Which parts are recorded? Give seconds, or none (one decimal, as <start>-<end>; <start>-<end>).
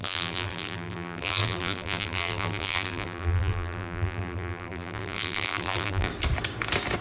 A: 6.1-7.0